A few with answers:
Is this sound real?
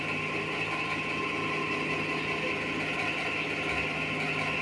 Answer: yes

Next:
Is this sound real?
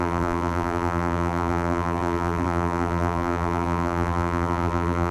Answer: no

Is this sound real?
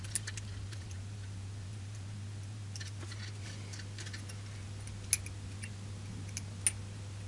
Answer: yes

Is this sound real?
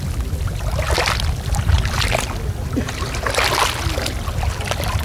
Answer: yes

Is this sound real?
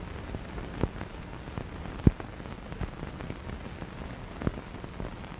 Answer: yes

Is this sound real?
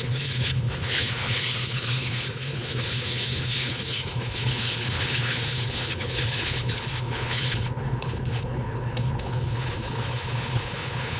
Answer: no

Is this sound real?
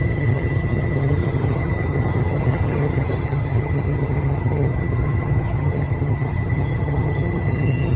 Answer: no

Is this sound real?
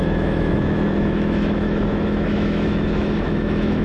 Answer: no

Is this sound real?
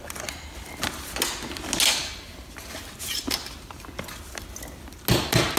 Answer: yes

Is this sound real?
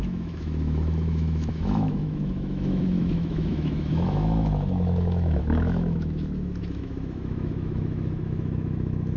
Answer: no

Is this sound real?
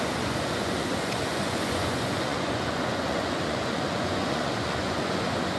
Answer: no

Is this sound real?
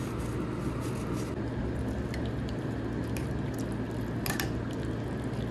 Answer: yes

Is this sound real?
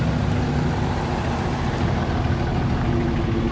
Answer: yes